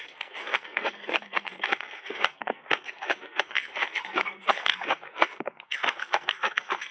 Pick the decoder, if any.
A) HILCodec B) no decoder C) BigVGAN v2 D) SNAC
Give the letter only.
D